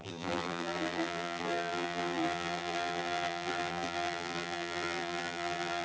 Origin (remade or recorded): remade